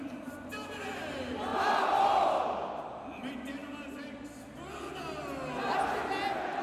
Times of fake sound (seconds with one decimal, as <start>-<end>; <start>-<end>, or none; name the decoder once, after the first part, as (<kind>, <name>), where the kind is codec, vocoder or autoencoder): 1.5-2.8 (vocoder, BigVGAN v2)